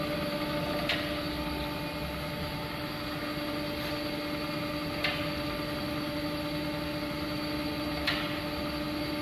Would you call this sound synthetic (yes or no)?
no